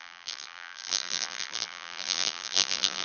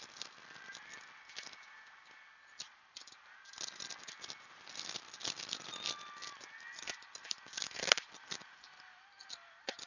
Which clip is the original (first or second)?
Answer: second